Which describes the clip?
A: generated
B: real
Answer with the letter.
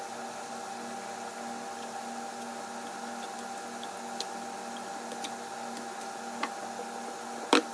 B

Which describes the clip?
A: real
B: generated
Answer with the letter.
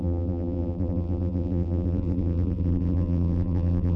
B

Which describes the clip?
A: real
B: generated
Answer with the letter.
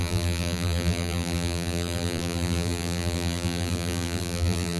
B